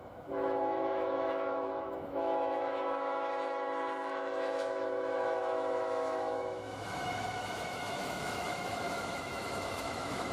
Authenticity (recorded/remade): remade